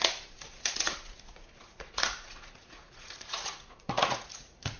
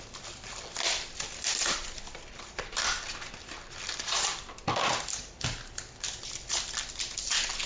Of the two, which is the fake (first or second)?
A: first